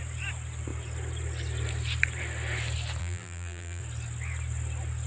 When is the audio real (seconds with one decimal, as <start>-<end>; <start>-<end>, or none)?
0.0-3.0; 3.8-5.1